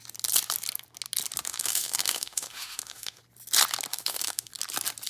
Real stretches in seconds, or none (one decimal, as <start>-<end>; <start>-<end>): 0.0-1.5; 3.2-3.9; 4.5-5.1